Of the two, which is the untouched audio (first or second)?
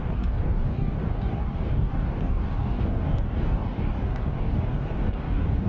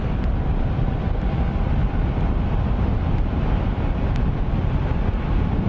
second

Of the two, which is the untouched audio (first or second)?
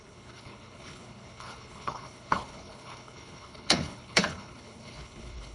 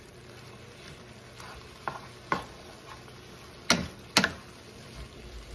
second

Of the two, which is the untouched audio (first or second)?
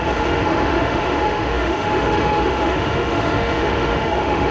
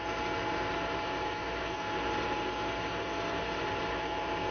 second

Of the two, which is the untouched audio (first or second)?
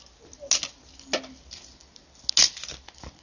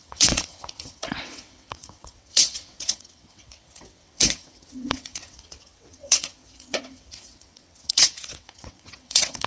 first